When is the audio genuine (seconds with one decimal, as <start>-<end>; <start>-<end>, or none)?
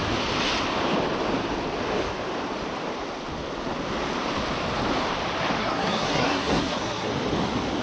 0.0-5.6; 7.1-7.8